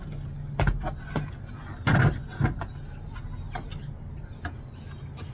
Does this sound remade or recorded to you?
recorded